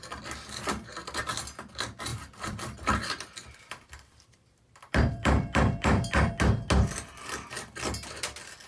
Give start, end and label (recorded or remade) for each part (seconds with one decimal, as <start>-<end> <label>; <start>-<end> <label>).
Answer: 0.0-2.1 recorded; 2.1-6.3 remade; 6.3-8.7 recorded